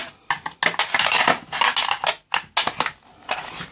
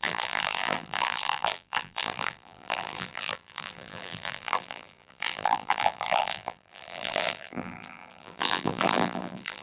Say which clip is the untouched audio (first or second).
first